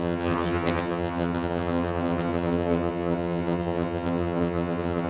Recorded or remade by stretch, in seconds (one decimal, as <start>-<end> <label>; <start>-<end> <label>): 0.0-5.1 remade